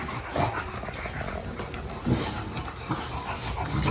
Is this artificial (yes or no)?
no